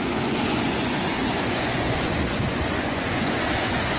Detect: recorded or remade remade